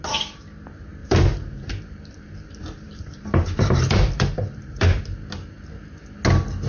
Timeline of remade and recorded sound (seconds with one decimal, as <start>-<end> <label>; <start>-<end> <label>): 0.0-1.0 recorded; 1.0-5.0 remade; 5.0-6.7 recorded